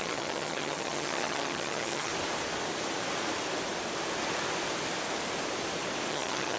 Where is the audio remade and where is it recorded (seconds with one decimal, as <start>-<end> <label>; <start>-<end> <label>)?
0.0-2.1 remade; 2.1-6.1 recorded; 6.1-6.6 remade